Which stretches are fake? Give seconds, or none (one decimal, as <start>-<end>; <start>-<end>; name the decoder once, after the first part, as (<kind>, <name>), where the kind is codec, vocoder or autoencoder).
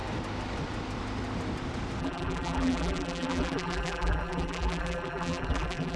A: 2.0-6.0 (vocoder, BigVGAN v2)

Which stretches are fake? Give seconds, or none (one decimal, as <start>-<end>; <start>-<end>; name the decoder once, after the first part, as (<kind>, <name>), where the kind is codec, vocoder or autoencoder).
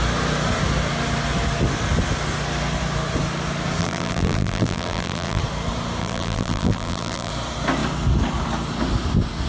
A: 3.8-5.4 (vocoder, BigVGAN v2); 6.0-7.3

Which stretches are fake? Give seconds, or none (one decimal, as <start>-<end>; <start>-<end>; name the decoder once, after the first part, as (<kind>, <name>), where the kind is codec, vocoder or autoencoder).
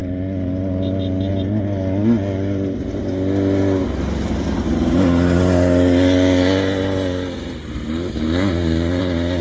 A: none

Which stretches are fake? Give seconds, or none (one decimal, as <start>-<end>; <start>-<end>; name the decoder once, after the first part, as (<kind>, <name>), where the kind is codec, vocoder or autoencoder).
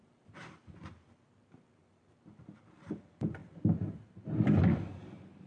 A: 0.0-5.5 (vocoder, BigVGAN v2)